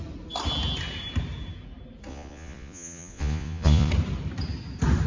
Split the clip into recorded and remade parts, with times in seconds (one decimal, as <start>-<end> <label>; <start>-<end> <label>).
0.0-2.1 recorded; 2.1-3.9 remade; 3.9-5.1 recorded